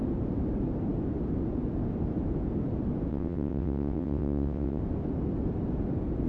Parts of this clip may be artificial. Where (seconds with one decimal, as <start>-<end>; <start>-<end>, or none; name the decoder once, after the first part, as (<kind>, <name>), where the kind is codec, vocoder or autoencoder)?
3.1-4.8 (vocoder, WaveNeXt)